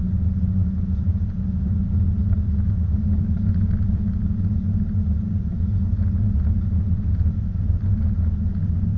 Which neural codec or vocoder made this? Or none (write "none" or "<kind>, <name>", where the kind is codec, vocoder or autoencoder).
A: vocoder, Vocos